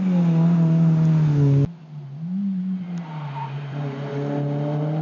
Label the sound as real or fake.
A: real